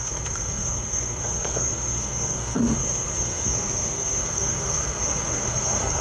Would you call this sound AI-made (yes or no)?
yes